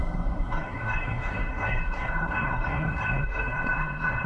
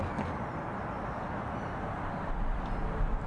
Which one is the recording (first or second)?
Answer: second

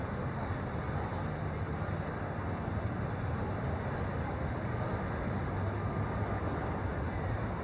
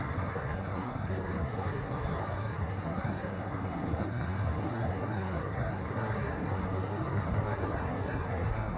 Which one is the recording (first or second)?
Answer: first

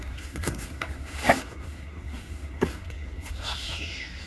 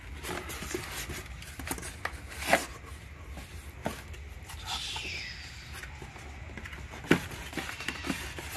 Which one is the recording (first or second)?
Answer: second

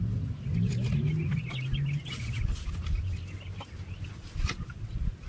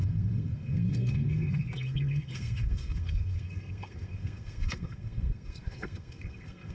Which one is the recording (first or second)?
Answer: first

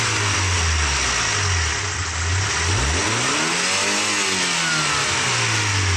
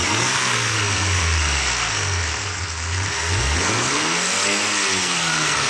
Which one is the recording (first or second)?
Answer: first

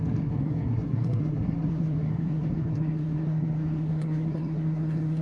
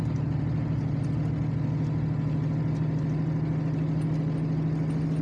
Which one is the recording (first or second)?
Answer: second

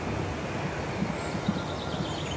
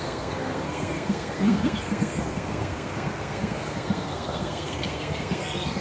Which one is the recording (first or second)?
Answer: first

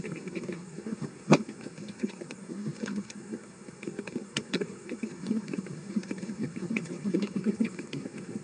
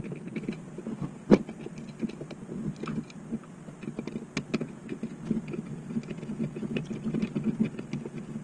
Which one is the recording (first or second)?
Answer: second